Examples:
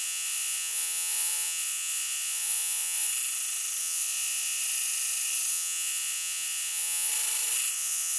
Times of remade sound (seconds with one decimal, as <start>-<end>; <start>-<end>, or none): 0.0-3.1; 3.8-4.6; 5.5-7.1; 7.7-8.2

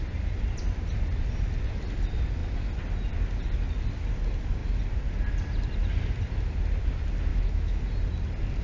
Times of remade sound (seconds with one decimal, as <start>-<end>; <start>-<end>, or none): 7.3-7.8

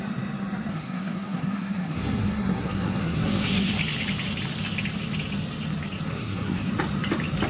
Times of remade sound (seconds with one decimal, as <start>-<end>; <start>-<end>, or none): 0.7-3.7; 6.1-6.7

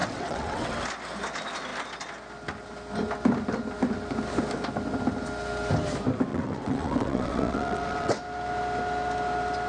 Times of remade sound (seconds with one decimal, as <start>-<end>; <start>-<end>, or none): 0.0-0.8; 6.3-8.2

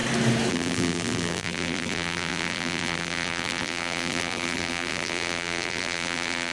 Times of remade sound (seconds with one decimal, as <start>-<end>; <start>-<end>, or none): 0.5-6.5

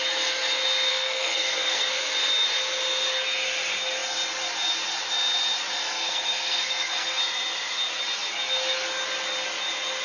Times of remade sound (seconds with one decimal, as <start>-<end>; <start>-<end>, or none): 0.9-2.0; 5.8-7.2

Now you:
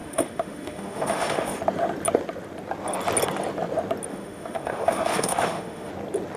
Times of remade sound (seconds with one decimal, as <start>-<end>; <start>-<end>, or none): 0.0-1.6; 4.1-5.9

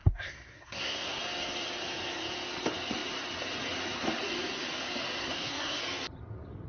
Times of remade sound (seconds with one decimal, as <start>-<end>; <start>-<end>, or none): 0.0-1.2; 5.2-5.8